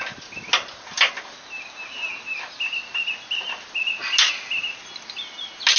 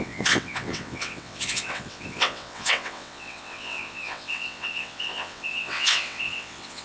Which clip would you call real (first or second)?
first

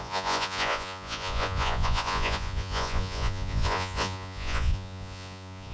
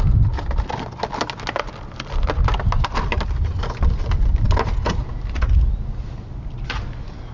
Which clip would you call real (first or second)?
second